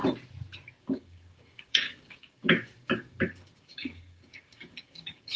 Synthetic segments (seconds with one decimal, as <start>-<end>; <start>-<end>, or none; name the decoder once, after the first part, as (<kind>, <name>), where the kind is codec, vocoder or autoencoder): 0.8-5.4 (codec, DAC)